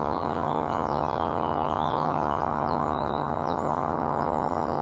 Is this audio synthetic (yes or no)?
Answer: yes